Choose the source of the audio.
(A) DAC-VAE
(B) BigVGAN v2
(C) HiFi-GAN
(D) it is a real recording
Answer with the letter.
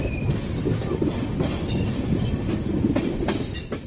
D